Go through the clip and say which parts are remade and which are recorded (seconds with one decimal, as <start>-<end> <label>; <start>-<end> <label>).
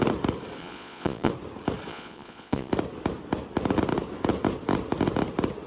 0.0-0.6 recorded; 0.6-1.3 remade; 1.3-1.9 recorded; 1.9-2.7 remade; 2.7-5.7 recorded